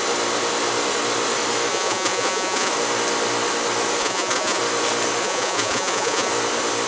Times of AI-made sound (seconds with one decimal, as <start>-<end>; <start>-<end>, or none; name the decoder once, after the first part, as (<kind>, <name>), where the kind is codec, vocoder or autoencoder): 1.7-2.7 (vocoder, Vocos); 4.0-4.6; 5.2-6.3